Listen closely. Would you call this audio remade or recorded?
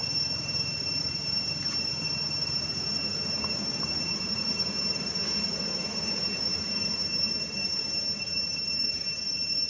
remade